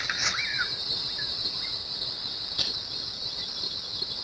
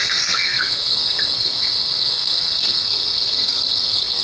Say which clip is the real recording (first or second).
first